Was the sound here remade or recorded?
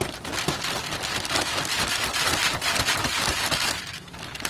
recorded